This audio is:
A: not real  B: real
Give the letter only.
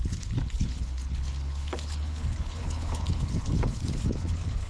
A